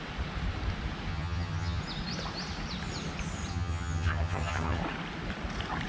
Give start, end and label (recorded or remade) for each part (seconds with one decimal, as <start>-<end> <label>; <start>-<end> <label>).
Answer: 0.0-1.1 recorded; 1.1-1.8 remade; 1.8-3.5 recorded; 3.5-4.8 remade; 4.8-5.9 recorded